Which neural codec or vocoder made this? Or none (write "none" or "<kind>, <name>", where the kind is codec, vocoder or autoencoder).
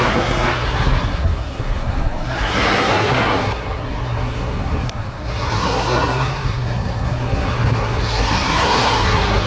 codec, SNAC